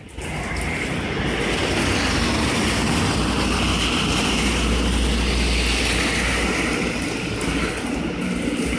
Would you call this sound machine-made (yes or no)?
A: no